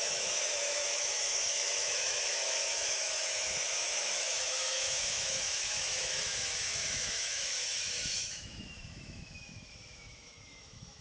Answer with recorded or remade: remade